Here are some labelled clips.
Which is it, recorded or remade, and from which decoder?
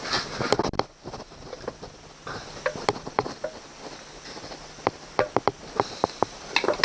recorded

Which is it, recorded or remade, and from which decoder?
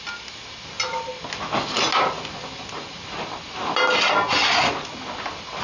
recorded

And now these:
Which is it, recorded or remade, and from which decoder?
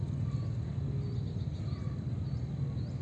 recorded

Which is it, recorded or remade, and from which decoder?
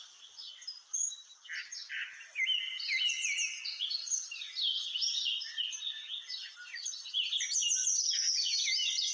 recorded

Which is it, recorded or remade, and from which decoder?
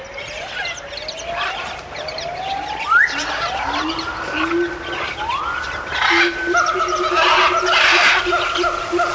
recorded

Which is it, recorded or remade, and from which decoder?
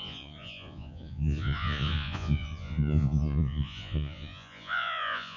remade, vocoder, Vocos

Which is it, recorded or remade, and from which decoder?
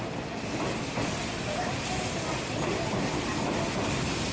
recorded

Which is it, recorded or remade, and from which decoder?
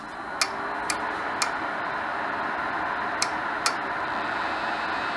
recorded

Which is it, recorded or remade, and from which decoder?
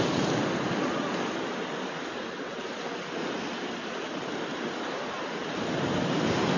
recorded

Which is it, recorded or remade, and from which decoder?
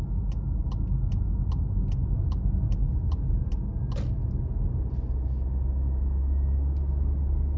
recorded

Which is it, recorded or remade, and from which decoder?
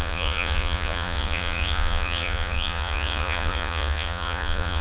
remade, vocoder, Vocos